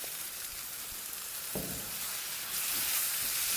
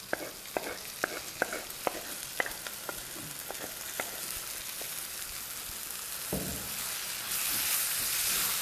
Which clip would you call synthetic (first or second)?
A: first